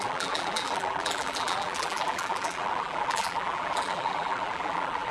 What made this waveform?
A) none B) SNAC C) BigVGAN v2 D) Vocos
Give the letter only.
C